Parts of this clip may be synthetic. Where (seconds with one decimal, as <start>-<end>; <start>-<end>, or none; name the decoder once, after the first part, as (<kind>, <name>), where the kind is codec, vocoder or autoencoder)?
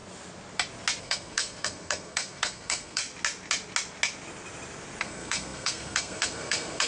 1.0-3.0 (codec, SNAC); 5.0-6.9